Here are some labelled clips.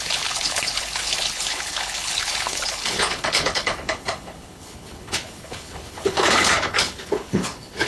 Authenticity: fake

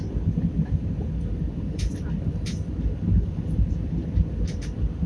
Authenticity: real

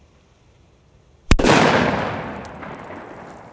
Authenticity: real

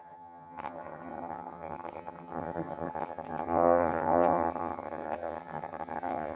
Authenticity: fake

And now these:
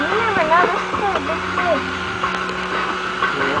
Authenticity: real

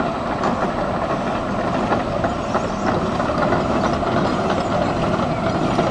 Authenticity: real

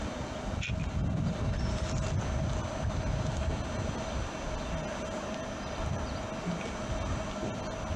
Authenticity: real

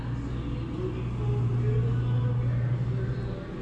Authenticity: real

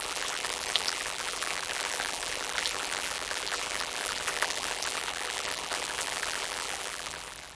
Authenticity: fake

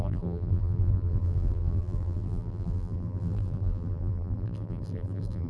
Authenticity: fake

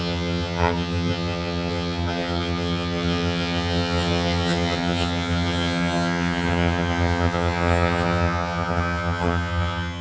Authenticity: fake